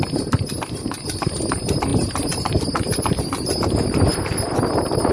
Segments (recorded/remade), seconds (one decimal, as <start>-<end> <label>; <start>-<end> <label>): 0.0-1.9 recorded; 1.9-3.2 remade; 3.2-4.1 recorded; 4.1-5.1 remade